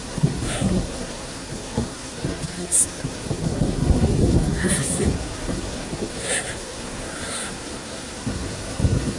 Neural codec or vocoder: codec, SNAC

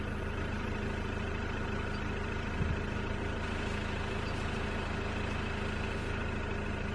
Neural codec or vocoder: none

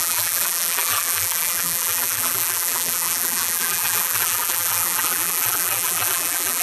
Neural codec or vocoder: vocoder, BigVGAN v2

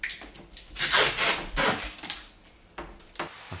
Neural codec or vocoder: none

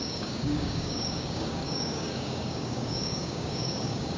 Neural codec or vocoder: codec, DAC